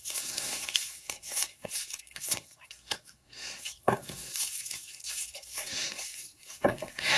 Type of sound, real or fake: fake